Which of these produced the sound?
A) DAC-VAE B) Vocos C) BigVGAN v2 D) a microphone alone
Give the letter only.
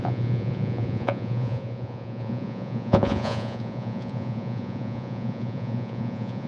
B